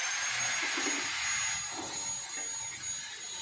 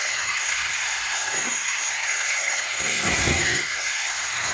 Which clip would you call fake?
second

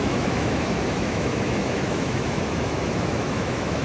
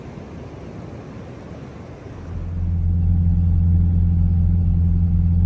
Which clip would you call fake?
first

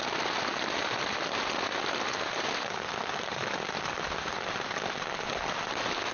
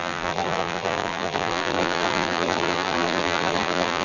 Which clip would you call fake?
second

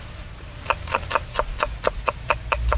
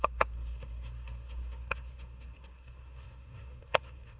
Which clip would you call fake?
second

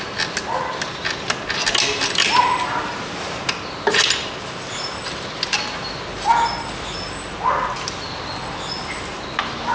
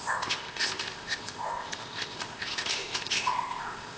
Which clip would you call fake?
second